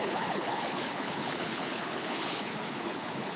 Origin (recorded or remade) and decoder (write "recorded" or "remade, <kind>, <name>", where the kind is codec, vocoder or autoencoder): remade, codec, HILCodec